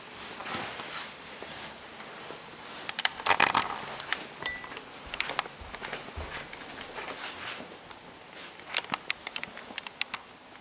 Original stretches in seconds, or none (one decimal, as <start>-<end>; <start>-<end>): 0.0-10.6